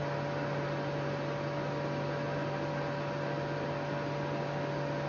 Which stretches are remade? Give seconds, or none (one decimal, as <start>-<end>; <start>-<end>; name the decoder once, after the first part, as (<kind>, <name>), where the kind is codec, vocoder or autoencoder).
none